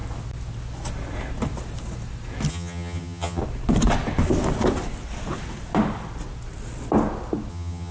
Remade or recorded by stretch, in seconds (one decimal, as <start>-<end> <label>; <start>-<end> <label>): 0.0-2.5 recorded; 2.5-3.4 remade; 3.4-7.5 recorded; 7.5-7.9 remade